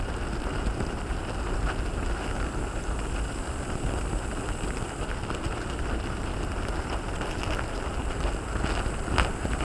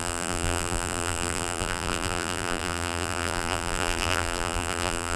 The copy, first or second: second